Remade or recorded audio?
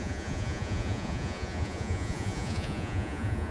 remade